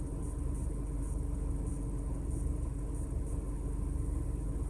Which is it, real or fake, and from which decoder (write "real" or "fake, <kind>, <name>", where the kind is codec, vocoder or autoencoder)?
real